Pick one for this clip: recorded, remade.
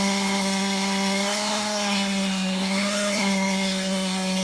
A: remade